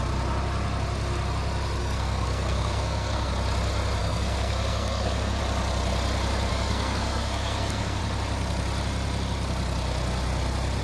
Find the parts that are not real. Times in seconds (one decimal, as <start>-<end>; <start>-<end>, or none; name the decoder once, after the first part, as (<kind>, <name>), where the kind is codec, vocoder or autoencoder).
1.8-3.3 (codec, SNAC); 4.0-5.4; 6.5-8.0

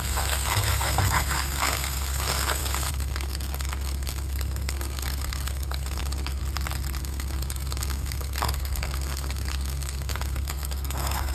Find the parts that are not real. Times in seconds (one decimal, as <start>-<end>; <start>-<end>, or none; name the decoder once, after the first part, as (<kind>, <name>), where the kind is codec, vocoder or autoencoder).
0.0-6.4 (codec, SNAC); 7.0-11.3

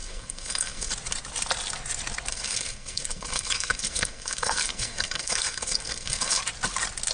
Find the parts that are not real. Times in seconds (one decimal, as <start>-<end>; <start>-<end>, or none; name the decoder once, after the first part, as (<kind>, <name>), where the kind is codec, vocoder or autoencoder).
0.0-0.9 (codec, SNAC); 2.3-6.4

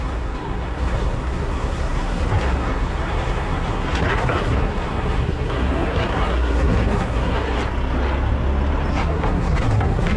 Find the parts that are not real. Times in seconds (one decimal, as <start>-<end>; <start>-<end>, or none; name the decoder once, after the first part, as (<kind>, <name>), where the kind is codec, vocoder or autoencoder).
0.0-7.6 (codec, SNAC); 8.9-10.2

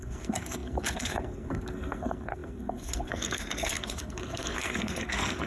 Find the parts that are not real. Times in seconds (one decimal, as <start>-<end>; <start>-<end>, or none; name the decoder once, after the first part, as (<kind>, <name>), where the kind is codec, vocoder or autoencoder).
0.0-5.5 (codec, SNAC)

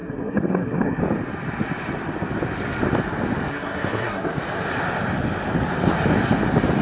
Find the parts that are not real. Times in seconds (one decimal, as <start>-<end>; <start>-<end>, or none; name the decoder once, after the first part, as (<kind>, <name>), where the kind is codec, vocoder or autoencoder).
0.0-1.0 (codec, SNAC); 3.5-4.3